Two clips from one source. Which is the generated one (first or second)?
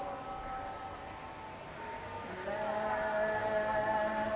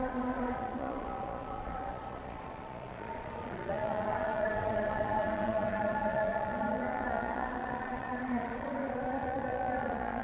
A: second